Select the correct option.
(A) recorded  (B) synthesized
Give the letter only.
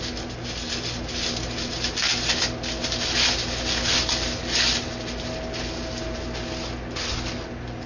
A